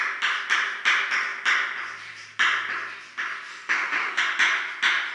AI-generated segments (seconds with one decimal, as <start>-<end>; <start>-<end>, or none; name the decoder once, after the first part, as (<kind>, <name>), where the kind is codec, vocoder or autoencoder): 3.5-4.2 (autoencoder, DAC-VAE)